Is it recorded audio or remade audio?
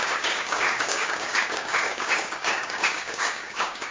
remade